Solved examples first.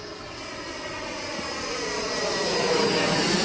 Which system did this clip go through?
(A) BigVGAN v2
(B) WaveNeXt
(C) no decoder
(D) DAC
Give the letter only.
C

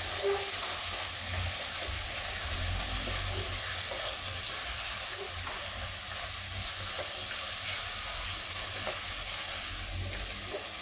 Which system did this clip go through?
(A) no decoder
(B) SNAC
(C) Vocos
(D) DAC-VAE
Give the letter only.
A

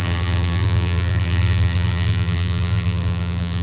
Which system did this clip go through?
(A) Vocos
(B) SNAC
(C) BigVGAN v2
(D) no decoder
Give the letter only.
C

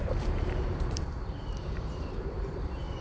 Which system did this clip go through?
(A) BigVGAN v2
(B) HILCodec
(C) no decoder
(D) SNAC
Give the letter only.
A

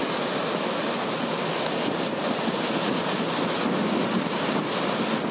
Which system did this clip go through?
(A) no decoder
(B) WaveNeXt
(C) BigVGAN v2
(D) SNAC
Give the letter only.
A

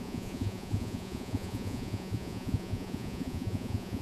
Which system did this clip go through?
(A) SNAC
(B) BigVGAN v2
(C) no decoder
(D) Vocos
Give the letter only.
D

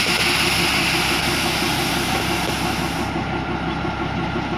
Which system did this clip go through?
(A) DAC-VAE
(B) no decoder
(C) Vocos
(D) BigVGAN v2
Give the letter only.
B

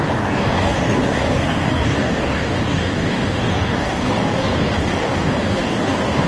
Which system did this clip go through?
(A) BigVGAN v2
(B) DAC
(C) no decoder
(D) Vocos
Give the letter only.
B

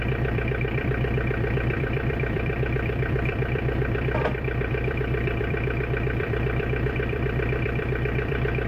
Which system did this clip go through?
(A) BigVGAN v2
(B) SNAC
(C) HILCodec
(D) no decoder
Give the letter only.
A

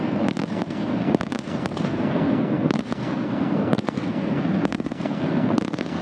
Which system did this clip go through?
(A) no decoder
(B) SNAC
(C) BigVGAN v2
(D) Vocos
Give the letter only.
B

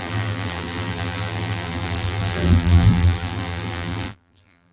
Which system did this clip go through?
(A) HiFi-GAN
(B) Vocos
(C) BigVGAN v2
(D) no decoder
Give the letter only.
C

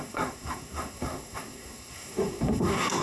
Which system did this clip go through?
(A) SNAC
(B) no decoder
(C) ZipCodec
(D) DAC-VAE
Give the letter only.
A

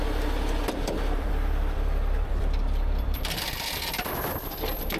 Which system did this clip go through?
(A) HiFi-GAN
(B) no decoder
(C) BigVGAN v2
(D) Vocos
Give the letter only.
C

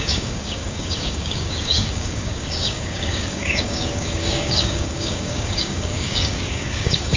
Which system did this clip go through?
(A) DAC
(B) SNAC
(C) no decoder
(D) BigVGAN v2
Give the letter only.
A